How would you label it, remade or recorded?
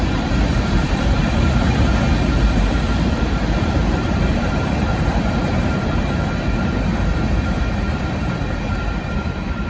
remade